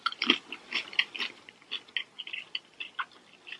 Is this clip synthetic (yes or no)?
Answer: no